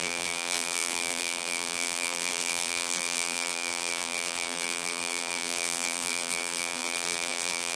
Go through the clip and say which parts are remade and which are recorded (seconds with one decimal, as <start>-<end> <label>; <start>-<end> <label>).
0.0-7.8 remade